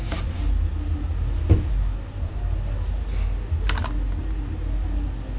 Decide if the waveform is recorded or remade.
recorded